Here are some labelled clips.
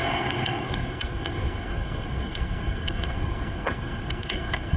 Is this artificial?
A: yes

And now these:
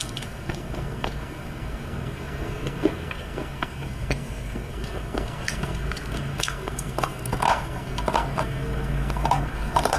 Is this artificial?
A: yes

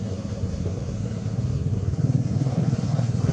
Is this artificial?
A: yes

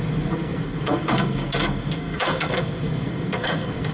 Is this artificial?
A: yes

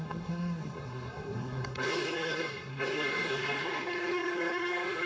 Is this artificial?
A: yes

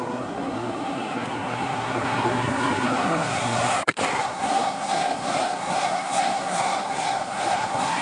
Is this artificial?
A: yes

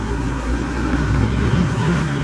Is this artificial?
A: yes